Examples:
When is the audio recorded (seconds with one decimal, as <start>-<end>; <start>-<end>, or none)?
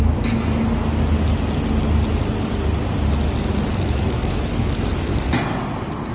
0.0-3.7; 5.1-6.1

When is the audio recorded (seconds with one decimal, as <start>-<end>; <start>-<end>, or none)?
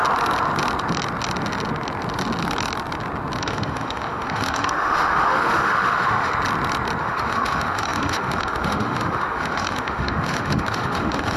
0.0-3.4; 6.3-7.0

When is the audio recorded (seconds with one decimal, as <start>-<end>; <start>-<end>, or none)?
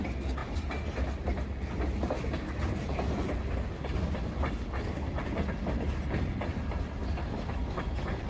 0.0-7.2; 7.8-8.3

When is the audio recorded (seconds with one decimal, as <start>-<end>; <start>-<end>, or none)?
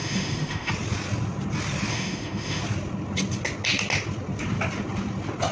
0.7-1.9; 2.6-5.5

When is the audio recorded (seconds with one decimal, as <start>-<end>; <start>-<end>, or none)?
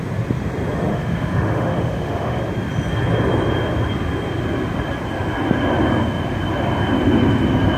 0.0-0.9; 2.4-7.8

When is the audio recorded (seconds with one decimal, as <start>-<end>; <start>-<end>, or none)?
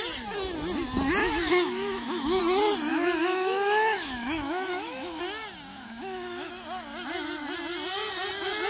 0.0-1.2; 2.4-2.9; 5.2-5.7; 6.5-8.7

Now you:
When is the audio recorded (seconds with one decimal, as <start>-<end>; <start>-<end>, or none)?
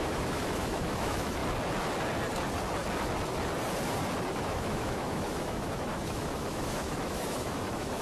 1.4-4.3